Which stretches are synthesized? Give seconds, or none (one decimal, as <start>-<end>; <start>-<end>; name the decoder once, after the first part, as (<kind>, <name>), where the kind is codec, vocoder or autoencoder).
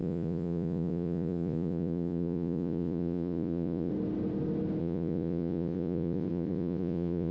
0.0-3.9 (vocoder, Vocos); 4.8-7.3